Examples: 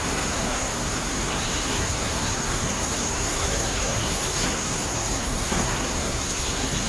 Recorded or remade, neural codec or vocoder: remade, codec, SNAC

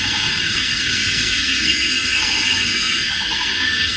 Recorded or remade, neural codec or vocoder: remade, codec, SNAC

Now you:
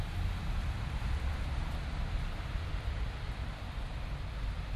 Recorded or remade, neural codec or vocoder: remade, vocoder, BigVGAN v2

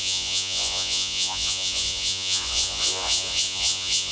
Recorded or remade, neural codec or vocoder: remade, vocoder, Vocos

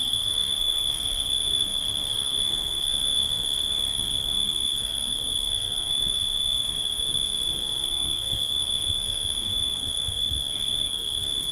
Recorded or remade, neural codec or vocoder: remade, codec, SNAC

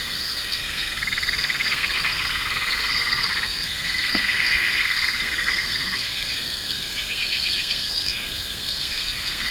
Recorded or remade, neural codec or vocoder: remade, codec, SNAC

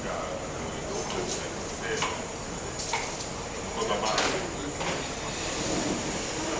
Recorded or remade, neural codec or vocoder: recorded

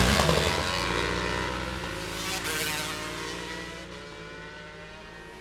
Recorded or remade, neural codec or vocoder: recorded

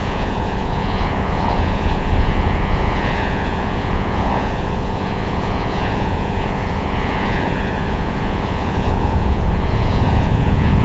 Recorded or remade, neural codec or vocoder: remade, vocoder, Vocos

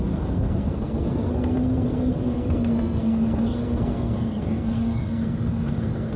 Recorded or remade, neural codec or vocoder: remade, codec, SNAC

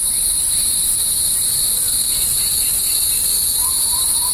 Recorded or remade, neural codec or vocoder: remade, vocoder, BigVGAN v2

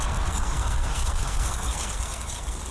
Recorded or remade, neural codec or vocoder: remade, codec, SNAC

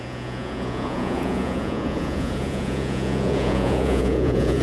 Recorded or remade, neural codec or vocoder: remade, vocoder, Vocos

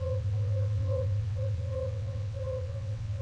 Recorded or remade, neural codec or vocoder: remade, vocoder, WaveNeXt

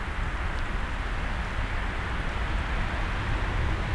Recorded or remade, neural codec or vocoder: recorded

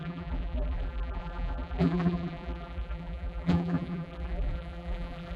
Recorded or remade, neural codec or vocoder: remade, vocoder, BigVGAN v2